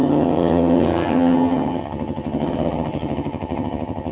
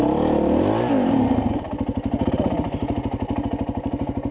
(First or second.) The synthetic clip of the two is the first